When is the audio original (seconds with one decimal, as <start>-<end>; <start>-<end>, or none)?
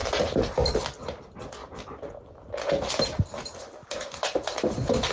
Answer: 0.5-3.8